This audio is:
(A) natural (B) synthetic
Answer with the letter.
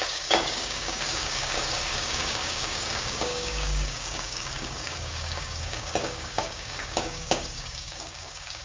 B